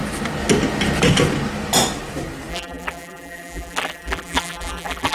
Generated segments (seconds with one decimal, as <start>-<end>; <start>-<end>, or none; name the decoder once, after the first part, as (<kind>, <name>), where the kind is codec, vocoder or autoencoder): 2.5-5.1 (vocoder, BigVGAN v2)